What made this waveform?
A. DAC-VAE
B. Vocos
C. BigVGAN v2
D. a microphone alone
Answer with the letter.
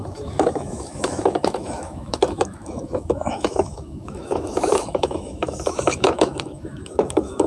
A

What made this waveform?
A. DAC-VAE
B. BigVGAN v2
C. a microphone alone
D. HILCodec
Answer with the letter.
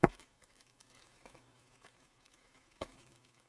A